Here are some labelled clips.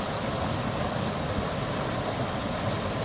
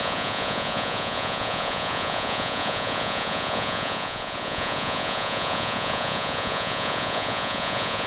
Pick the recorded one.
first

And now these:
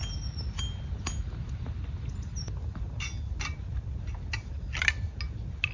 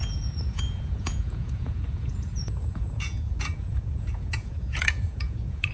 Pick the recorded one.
first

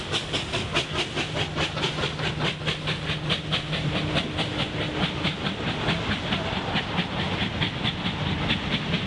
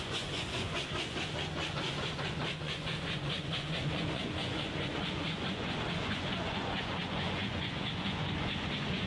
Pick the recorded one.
first